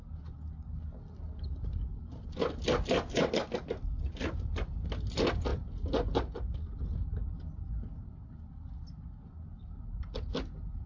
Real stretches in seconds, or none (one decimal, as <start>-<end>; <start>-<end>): 0.0-10.9